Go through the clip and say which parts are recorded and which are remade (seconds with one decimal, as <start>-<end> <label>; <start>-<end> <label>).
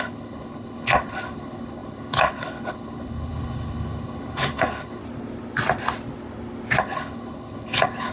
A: 0.0-5.0 remade; 5.0-6.8 recorded; 6.8-8.1 remade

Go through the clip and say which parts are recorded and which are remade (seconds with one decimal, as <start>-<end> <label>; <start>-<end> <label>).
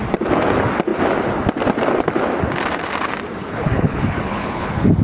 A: 0.0-3.4 recorded; 3.4-5.0 remade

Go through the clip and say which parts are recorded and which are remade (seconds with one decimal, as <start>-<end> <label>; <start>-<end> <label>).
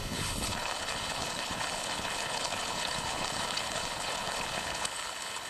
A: 0.0-5.5 remade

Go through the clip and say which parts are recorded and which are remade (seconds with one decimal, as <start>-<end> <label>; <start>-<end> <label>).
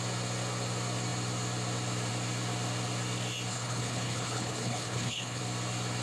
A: 0.0-3.5 recorded; 3.5-5.4 remade; 5.4-6.0 recorded